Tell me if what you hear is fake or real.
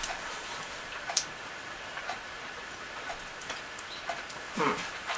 real